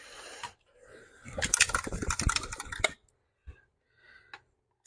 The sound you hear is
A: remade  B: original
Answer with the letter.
B